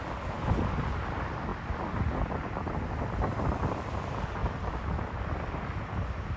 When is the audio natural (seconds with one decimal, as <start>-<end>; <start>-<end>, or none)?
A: 0.0-1.5; 3.8-4.4; 5.5-6.4